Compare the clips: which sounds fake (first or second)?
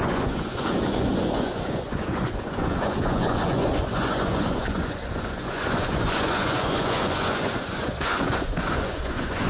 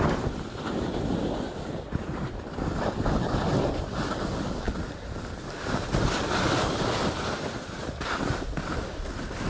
first